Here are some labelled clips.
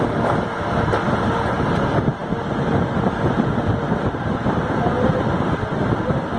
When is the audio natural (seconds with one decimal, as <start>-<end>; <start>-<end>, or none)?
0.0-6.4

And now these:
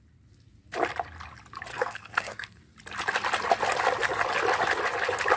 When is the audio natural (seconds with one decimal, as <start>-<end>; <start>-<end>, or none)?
0.0-1.7; 2.6-5.4

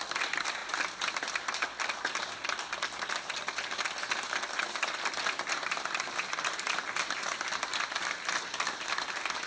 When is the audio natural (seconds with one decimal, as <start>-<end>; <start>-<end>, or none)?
0.0-7.7; 8.3-9.5

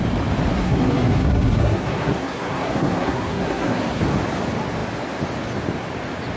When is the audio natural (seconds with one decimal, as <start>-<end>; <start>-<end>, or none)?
0.0-0.5; 4.0-6.4

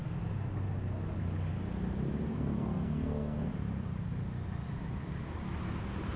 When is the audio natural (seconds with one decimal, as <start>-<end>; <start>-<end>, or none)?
0.0-2.3; 3.5-6.2

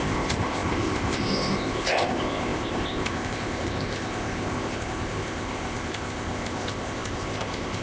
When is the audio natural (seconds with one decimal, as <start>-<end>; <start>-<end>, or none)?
none